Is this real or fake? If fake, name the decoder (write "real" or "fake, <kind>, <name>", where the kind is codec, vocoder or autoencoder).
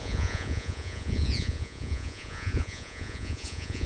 fake, vocoder, Vocos